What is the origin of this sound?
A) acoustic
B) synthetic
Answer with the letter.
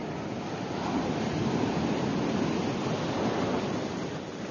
B